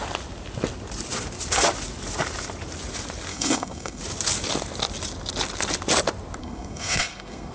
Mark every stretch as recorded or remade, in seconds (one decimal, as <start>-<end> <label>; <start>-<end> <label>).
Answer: 0.0-3.3 recorded; 3.3-4.0 remade; 4.0-6.4 recorded; 6.4-7.5 remade